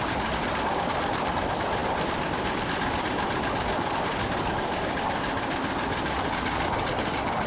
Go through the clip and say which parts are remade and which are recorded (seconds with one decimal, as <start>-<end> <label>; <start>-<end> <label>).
0.0-7.5 recorded